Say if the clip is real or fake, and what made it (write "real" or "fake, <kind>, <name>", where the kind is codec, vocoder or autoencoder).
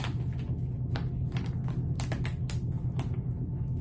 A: real